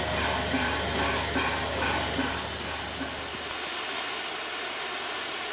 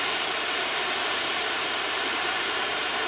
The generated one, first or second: second